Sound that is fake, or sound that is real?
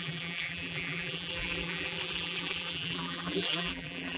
fake